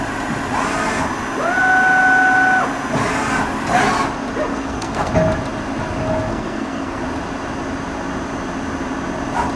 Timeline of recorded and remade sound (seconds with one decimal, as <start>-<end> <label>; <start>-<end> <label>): 0.0-4.5 recorded; 4.5-5.1 remade; 5.1-6.3 recorded; 6.3-7.0 remade; 7.0-9.6 recorded